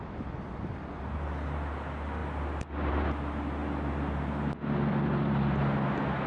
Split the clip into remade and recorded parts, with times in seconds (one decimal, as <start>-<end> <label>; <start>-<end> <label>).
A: 0.0-6.3 recorded